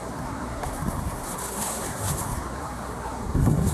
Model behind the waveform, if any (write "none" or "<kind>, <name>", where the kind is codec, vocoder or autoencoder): codec, SNAC